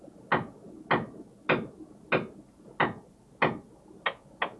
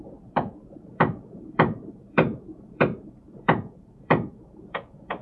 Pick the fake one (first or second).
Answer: second